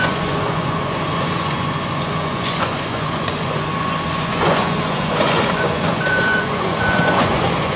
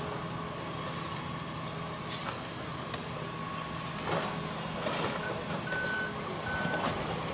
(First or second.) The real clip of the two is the second